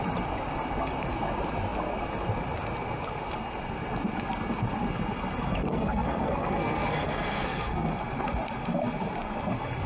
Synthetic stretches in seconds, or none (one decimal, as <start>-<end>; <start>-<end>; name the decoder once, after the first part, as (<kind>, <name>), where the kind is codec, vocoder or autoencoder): 5.6-8.0 (codec, SNAC)